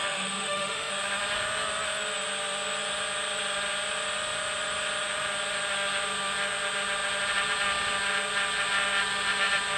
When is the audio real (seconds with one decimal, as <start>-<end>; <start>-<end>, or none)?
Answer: 0.9-9.8